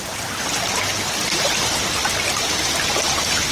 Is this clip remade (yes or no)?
no